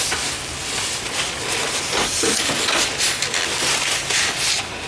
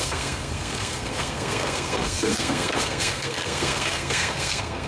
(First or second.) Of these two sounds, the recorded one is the first